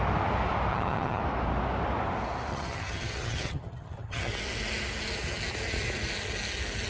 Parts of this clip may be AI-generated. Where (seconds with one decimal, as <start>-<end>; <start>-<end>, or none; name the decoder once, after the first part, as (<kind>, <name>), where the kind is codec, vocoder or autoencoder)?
0.7-1.2 (vocoder, HiFi-GAN); 2.5-4.3